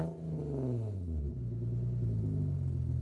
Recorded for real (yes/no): yes